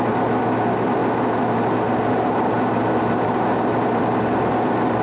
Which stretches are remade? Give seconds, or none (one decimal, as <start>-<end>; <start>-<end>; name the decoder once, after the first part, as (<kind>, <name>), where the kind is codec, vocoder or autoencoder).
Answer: none